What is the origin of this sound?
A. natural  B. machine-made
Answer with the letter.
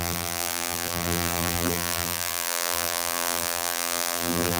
B